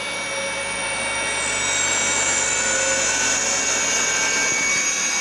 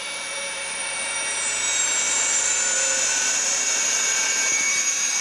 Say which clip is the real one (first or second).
first